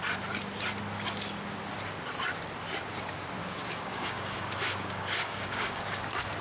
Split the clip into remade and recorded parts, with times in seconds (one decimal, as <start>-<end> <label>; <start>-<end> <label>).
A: 0.0-3.4 recorded; 3.4-6.0 remade; 6.0-6.4 recorded